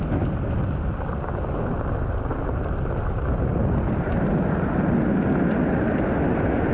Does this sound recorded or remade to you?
recorded